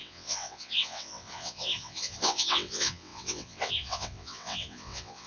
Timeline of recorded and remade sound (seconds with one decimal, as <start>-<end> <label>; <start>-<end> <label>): 0.0-5.3 remade